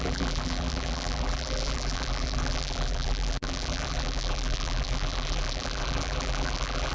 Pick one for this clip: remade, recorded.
remade